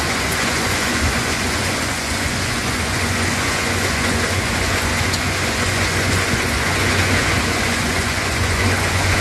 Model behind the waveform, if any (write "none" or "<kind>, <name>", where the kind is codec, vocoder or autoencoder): vocoder, Vocos